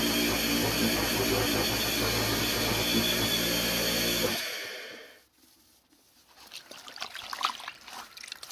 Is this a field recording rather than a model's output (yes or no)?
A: yes